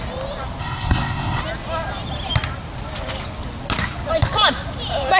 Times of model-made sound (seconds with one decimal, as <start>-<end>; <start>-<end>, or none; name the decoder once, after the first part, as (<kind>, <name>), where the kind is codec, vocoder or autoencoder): 0.6-1.4 (codec, SNAC)